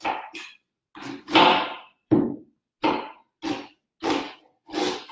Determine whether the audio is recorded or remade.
recorded